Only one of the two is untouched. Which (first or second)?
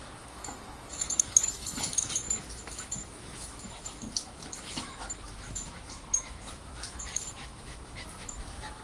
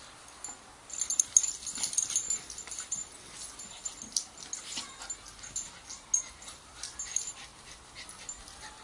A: second